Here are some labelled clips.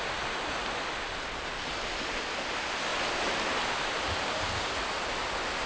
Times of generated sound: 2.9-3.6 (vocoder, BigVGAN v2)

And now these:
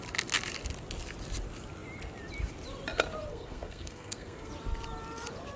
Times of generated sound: 3.3-4.5 (codec, SNAC)

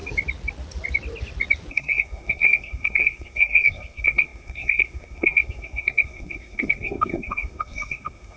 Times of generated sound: 1.7-8.4 (codec, SNAC)

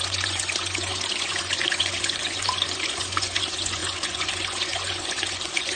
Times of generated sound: 0.0-5.8 (vocoder, Vocos)

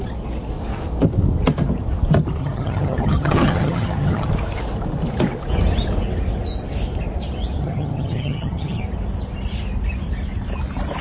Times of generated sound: 2.4-4.3 (vocoder, HiFi-GAN); 7.6-8.8

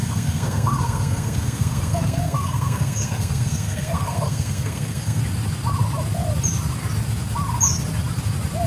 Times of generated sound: 0.0-5.2 (codec, SNAC)